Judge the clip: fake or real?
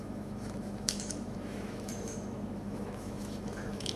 fake